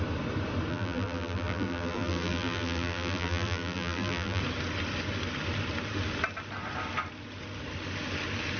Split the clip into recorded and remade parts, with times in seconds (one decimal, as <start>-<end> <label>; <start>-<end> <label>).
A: 0.0-0.7 recorded; 0.7-4.4 remade; 4.4-8.6 recorded